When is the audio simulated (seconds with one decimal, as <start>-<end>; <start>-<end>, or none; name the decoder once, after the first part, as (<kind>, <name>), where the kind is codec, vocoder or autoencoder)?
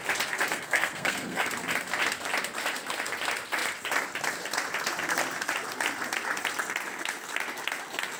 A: 0.5-1.5 (codec, SNAC)